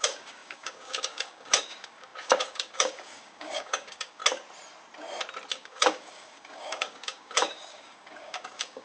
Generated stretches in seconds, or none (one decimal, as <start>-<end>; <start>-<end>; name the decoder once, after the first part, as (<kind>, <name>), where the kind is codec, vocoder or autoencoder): 0.0-4.2 (codec, DAC); 5.5-8.8